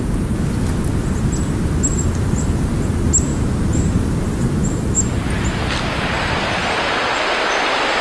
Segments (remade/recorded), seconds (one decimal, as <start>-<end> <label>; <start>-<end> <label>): 0.0-8.0 recorded